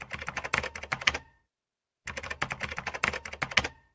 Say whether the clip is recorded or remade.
recorded